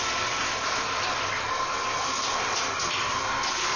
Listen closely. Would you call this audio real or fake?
real